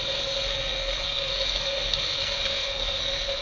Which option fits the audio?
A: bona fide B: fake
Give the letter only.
B